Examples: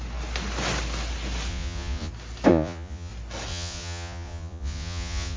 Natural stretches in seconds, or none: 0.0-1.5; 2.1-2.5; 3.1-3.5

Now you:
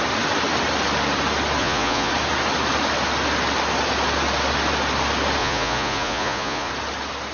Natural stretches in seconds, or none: 0.0-1.6; 2.1-5.4; 6.7-7.3

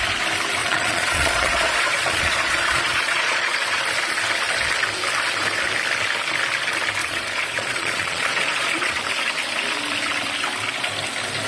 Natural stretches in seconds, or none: 0.0-0.6; 3.8-7.0; 9.0-11.5

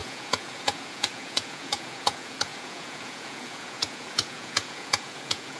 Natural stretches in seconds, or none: none

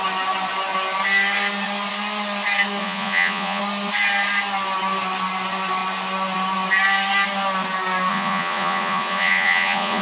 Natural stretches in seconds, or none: 0.0-2.8; 3.6-8.1